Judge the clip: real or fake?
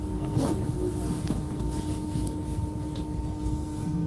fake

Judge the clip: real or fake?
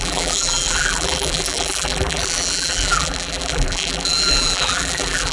fake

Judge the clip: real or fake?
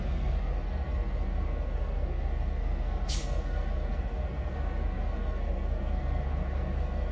fake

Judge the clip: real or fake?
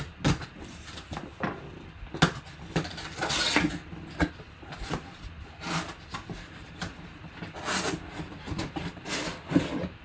real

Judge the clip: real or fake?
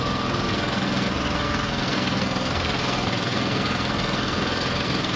fake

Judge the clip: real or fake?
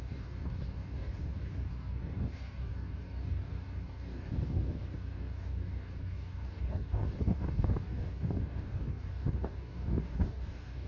fake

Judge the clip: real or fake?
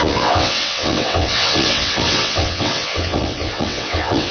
fake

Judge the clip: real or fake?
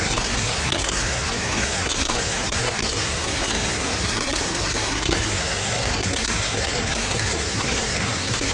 fake